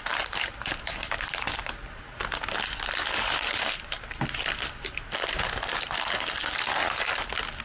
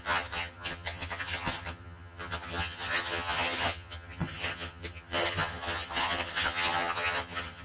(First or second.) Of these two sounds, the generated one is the second